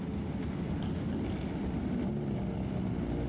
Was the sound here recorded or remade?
recorded